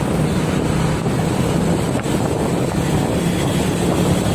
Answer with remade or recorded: recorded